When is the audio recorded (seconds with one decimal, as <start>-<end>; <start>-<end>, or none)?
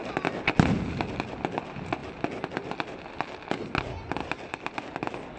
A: 0.0-4.2; 4.8-5.4